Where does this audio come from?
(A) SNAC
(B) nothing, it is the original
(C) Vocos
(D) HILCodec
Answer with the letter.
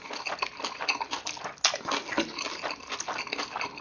B